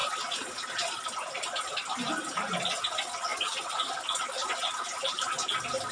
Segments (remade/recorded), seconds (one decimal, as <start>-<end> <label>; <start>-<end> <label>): 0.0-5.9 recorded